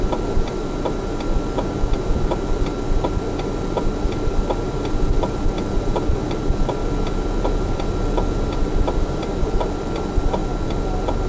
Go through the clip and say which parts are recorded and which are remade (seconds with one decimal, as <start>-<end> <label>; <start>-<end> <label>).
0.0-6.8 remade; 6.8-8.6 recorded; 8.6-10.4 remade; 10.4-11.3 recorded

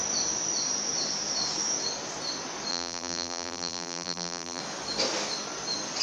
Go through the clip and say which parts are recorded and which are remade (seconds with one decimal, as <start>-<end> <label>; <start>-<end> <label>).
0.0-2.7 recorded; 2.7-4.6 remade; 4.6-6.0 recorded

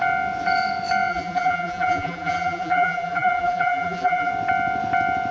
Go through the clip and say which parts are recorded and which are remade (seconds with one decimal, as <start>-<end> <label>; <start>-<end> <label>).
0.0-1.1 recorded; 1.1-4.3 remade; 4.3-5.3 recorded

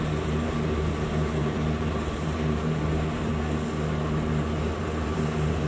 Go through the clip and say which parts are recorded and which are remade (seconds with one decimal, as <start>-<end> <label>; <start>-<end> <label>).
0.0-3.3 remade; 3.3-4.0 recorded; 4.0-5.7 remade

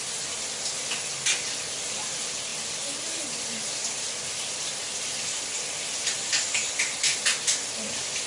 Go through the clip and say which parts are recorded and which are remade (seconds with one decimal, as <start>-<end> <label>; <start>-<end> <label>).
0.0-2.5 recorded; 2.5-6.5 remade; 6.5-7.1 recorded; 7.1-8.3 remade

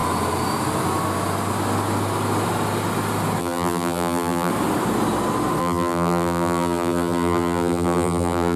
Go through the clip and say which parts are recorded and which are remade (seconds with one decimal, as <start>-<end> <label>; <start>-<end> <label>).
0.0-3.4 recorded; 3.4-4.5 remade; 4.5-5.6 recorded; 5.6-8.6 remade

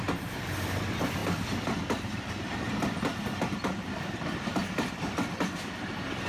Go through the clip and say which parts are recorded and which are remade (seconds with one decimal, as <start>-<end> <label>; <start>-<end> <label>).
0.0-6.3 remade